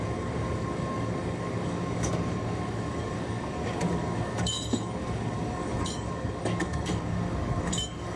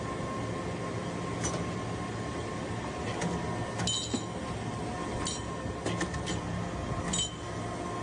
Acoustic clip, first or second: second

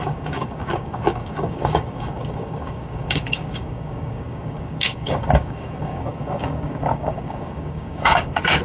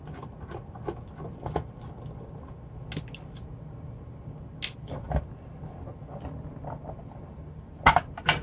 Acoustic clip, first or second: second